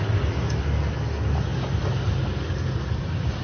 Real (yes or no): yes